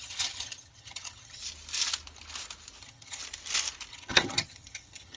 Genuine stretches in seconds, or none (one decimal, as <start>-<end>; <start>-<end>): 1.4-2.8; 3.2-3.9